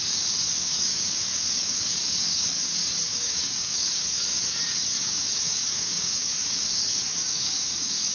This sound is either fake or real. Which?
fake